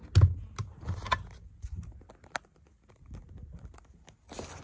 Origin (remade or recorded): recorded